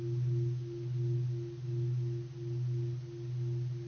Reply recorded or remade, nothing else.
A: recorded